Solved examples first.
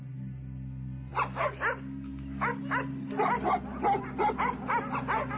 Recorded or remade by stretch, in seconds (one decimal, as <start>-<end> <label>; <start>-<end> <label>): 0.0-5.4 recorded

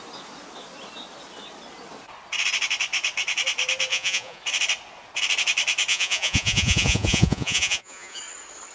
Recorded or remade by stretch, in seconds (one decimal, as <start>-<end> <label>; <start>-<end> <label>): 0.0-3.9 recorded; 3.9-4.4 remade; 4.4-5.9 recorded; 5.9-8.2 remade; 8.2-8.7 recorded

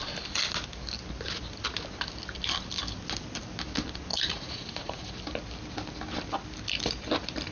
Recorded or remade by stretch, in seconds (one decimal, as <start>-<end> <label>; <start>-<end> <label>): 0.0-4.1 recorded; 4.1-5.1 remade; 5.1-7.5 recorded

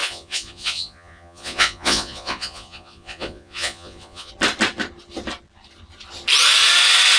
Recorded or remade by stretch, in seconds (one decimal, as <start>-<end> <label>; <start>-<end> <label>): 0.0-4.3 remade; 4.3-7.2 recorded

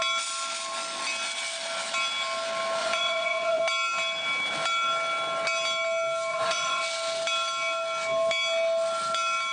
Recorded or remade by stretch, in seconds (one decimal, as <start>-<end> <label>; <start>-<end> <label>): 0.0-2.8 recorded; 2.8-3.6 remade; 3.6-6.3 recorded; 6.3-6.8 remade; 6.8-9.5 recorded